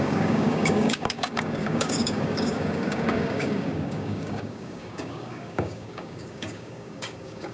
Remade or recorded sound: remade